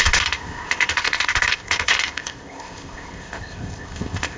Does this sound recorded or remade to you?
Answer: remade